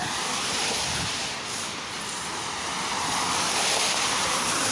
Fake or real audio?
real